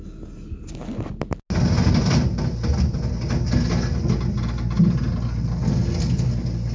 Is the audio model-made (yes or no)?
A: no